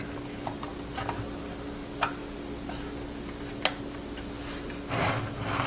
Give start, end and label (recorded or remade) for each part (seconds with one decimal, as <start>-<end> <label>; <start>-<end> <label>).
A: 0.0-5.7 recorded